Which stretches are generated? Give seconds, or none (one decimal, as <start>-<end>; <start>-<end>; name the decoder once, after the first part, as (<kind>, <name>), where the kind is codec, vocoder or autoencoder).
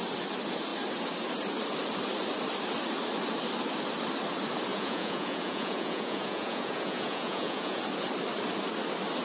4.7-7.8 (vocoder, Vocos)